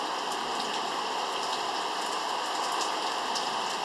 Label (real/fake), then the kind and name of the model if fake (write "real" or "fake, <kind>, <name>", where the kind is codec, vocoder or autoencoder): real